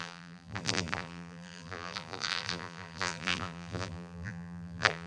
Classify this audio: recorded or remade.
remade